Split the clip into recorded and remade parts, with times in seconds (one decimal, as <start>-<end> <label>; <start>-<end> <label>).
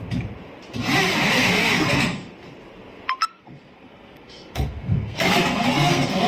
0.0-1.1 recorded; 1.1-2.3 remade; 2.3-3.2 recorded; 3.2-6.3 remade